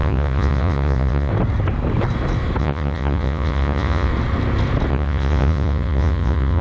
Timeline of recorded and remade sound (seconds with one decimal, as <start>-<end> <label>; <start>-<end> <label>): 0.0-1.3 remade; 1.3-2.6 recorded; 2.6-4.1 remade; 4.1-4.9 recorded; 4.9-6.6 remade